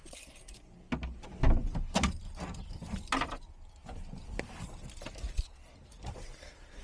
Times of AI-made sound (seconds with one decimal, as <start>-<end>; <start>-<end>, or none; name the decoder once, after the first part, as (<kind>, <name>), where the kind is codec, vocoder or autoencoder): none